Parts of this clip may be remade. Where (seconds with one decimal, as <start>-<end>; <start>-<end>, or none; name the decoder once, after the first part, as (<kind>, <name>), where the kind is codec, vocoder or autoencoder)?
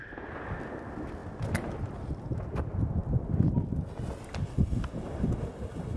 none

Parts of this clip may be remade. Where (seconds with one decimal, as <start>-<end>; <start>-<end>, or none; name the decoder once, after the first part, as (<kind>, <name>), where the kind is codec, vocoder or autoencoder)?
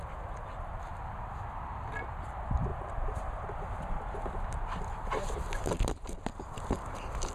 2.7-3.7 (vocoder, BigVGAN v2)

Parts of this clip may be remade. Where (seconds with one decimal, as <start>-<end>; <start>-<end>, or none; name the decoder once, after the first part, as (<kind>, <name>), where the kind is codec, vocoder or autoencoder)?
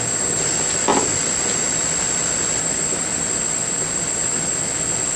none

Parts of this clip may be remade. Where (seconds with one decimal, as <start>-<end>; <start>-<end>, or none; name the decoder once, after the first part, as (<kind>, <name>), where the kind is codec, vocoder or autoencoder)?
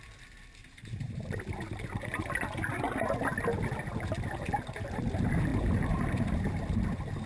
0.6-1.4 (vocoder, BigVGAN v2); 5.5-6.6